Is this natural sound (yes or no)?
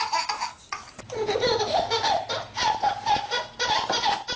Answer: yes